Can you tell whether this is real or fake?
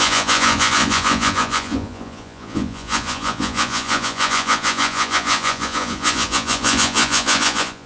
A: fake